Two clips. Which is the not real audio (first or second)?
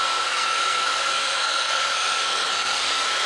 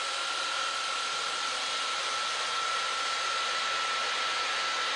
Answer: first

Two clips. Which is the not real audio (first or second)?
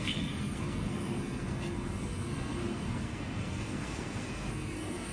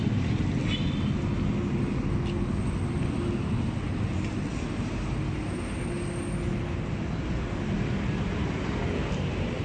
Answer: first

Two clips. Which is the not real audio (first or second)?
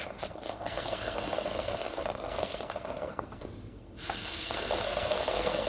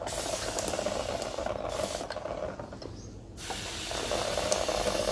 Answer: first